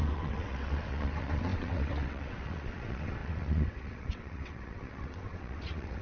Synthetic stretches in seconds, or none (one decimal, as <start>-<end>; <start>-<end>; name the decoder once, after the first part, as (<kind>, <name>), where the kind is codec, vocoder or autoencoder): 0.0-6.0 (vocoder, WaveNeXt)